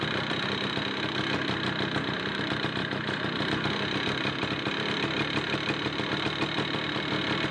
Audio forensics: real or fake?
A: fake